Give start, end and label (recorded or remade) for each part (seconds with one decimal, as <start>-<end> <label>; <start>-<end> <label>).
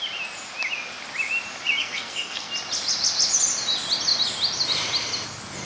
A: 0.0-1.8 recorded; 1.8-2.5 remade; 2.5-5.6 recorded